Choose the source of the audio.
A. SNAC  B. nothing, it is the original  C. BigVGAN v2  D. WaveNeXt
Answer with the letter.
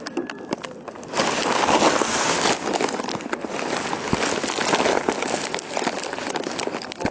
B